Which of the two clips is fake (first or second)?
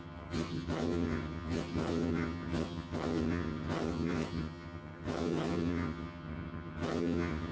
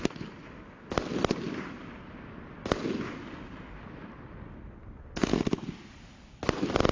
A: first